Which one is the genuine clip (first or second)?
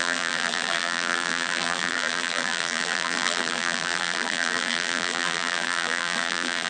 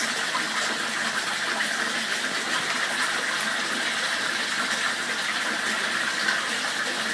second